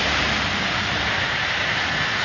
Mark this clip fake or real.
real